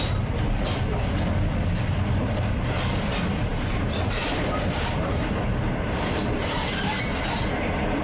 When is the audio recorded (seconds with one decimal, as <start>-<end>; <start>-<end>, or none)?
0.0-3.5